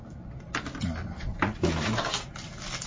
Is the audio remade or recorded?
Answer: recorded